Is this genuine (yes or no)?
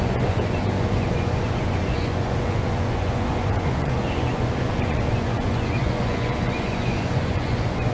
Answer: no